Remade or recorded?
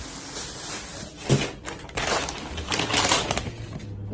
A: recorded